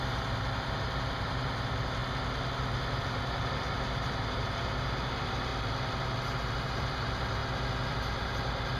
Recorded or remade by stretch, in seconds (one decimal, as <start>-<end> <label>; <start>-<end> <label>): 0.0-2.0 remade; 2.0-3.0 recorded; 3.0-5.5 remade; 5.5-6.2 recorded; 6.2-7.4 remade; 7.4-7.9 recorded; 7.9-8.8 remade